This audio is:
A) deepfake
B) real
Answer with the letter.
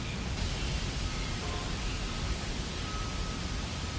B